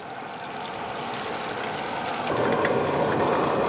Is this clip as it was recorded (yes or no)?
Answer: yes